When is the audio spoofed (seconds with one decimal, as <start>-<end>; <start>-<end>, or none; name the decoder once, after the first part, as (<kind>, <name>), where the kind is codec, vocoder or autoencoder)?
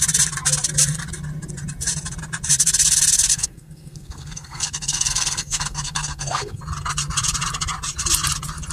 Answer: 3.3-6.6 (codec, SNAC)